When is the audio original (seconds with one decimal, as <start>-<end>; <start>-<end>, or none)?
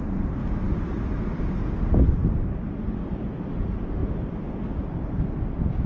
0.0-5.9